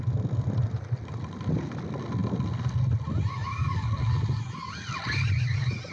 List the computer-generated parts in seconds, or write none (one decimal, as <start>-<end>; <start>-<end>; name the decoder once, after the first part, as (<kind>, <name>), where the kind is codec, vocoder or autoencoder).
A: none